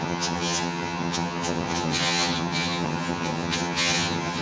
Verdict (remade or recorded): remade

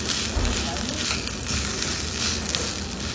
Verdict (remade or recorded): recorded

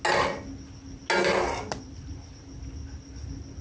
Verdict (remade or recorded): recorded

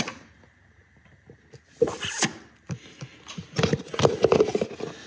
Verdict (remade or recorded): recorded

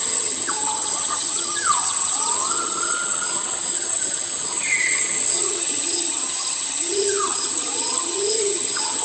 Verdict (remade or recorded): remade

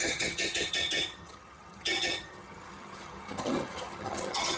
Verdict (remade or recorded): remade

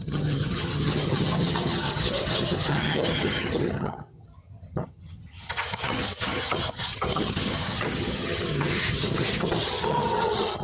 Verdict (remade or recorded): remade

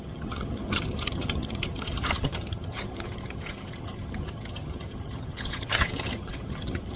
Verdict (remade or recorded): remade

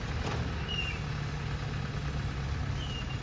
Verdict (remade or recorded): recorded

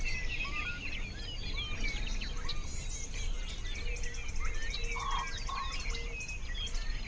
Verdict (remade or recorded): recorded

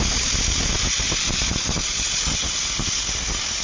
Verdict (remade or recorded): recorded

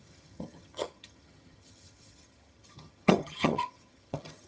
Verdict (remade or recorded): remade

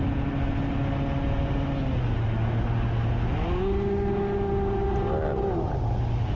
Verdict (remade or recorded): recorded